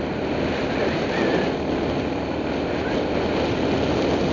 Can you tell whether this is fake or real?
real